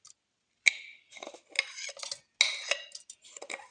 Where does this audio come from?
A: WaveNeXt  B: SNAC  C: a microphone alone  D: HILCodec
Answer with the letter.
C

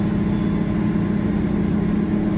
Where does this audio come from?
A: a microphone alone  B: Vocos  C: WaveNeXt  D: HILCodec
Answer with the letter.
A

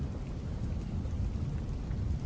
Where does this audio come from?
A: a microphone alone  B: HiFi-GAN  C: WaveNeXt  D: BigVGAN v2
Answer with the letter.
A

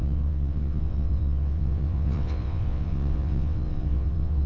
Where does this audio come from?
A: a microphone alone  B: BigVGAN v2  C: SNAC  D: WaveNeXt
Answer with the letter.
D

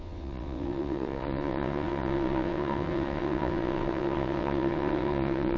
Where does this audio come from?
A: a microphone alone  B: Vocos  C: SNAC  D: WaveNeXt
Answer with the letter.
D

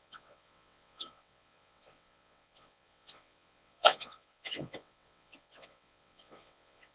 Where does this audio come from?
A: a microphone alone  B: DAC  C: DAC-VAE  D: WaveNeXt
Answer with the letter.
D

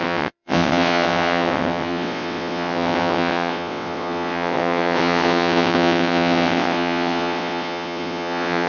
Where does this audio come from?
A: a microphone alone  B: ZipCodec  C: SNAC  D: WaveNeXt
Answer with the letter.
D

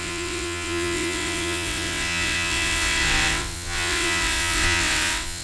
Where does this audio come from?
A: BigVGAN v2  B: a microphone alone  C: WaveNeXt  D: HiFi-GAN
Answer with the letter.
C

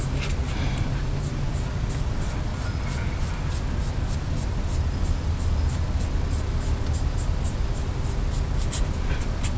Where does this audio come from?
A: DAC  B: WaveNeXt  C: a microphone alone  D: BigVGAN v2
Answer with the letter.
C